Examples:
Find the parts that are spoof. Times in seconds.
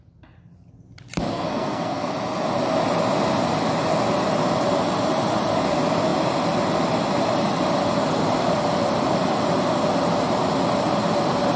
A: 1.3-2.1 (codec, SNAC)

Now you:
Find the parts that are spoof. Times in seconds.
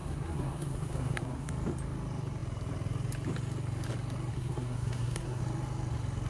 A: 0.0-1.5 (codec, SNAC); 4.3-5.4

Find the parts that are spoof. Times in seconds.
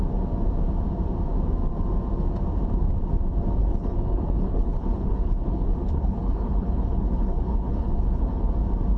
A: 3.6-8.5 (codec, HILCodec)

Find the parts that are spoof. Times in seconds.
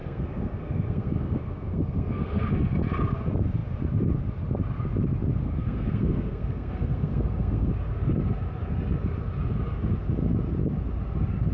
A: 0.0-2.5 (codec, SNAC); 5.4-7.7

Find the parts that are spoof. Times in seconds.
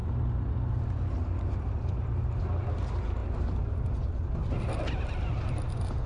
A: none